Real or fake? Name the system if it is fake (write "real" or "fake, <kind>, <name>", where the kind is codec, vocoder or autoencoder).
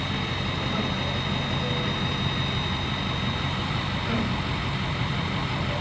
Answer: real